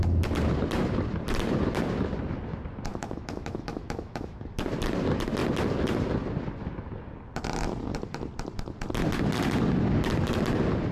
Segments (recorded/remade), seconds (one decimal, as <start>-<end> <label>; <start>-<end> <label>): 0.0-2.9 recorded; 2.9-4.4 remade; 4.4-10.9 recorded